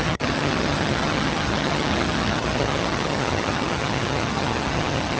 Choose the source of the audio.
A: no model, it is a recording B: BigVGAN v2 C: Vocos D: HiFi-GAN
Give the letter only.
D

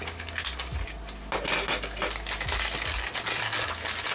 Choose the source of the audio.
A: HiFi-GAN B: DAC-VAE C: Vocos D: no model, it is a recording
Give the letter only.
D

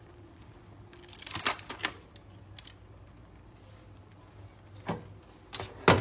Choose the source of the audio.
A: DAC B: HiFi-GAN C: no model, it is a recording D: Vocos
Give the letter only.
C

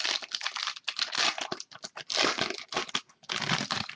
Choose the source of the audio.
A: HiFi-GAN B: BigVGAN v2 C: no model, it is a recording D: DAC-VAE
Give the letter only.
C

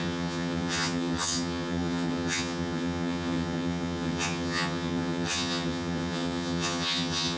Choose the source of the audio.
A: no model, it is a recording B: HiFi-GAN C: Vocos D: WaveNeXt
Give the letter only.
B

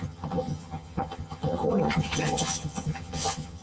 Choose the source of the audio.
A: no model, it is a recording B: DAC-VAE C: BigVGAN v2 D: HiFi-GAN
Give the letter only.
D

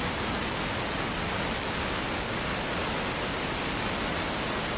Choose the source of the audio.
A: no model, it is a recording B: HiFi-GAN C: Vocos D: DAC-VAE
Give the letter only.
A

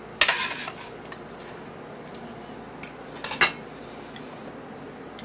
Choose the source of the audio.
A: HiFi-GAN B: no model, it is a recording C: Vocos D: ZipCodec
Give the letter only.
B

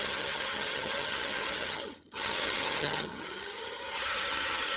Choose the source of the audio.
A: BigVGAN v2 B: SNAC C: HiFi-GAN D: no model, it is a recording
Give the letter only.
C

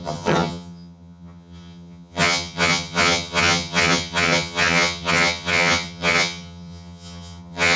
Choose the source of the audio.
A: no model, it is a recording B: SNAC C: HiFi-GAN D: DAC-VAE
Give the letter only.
C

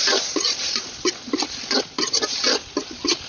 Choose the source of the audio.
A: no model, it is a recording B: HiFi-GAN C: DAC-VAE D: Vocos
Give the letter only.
A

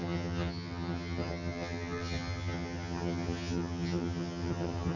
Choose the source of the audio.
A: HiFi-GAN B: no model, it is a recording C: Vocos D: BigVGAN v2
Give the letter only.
A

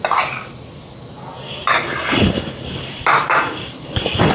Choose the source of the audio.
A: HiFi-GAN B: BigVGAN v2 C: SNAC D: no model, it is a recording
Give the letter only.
D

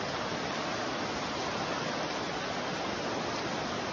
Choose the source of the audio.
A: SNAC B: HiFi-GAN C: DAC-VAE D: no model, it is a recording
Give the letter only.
D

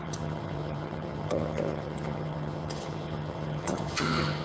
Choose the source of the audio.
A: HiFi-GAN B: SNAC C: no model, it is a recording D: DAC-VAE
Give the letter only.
A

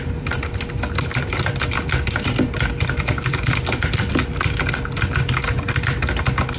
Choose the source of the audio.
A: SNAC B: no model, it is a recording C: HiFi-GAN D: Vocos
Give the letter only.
B